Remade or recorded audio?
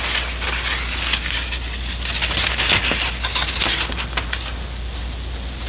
recorded